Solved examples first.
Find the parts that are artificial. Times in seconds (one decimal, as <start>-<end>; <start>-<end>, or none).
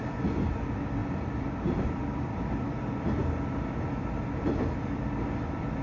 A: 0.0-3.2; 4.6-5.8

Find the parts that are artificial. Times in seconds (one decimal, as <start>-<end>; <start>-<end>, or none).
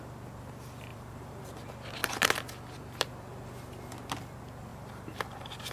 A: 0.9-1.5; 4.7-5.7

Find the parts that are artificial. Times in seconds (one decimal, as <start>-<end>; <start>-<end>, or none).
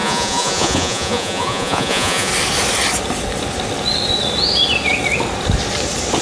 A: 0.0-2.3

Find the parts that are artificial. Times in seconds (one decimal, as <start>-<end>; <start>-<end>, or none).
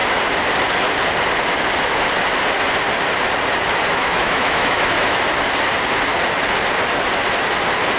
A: 4.0-5.2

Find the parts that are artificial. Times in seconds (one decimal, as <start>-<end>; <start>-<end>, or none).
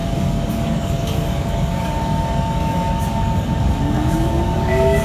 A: 0.0-5.0